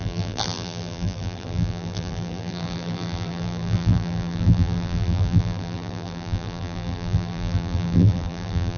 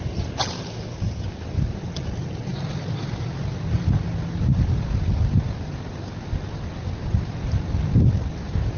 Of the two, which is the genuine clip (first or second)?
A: second